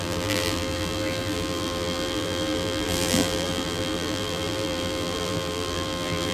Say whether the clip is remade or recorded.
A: remade